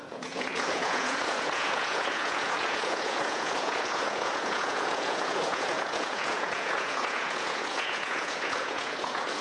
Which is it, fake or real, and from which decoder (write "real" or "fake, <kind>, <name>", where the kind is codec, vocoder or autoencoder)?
fake, vocoder, Vocos